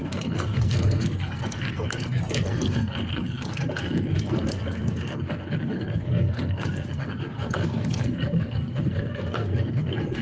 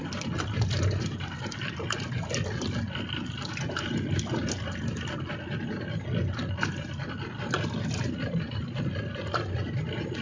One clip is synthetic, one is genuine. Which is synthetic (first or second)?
first